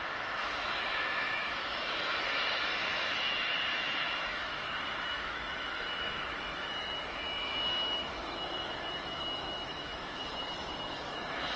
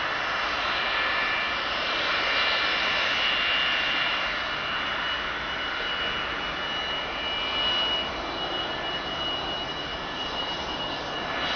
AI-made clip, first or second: first